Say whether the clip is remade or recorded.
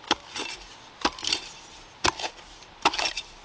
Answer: recorded